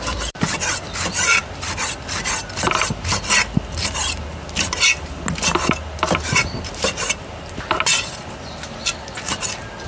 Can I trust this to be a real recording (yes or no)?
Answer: yes